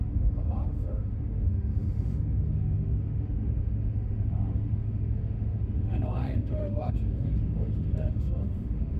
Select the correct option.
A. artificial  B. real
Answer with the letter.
A